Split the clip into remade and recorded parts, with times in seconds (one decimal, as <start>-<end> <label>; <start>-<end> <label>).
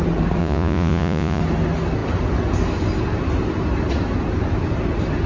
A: 0.0-0.4 recorded; 0.4-1.4 remade; 1.4-5.3 recorded